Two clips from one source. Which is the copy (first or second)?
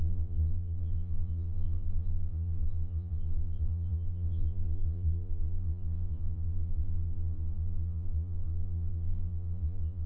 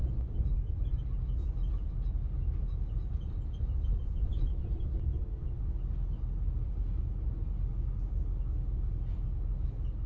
first